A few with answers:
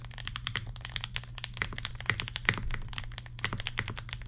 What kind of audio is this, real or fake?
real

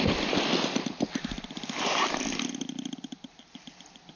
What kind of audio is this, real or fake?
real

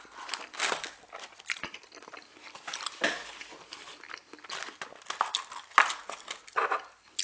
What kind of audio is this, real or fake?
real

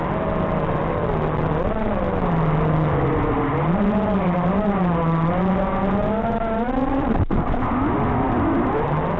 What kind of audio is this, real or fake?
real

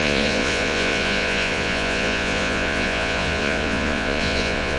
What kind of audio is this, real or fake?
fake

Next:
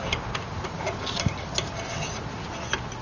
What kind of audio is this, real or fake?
real